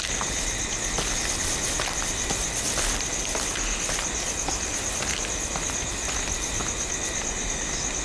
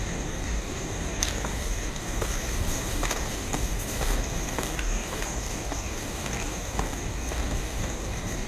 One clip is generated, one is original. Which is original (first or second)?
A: first